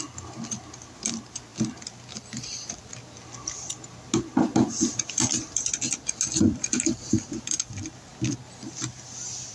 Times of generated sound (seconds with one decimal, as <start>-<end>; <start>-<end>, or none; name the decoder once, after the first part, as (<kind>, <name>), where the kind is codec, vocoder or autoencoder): none